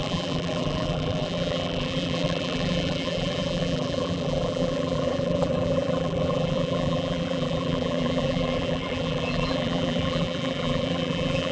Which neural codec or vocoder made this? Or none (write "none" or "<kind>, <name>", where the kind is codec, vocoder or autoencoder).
vocoder, BigVGAN v2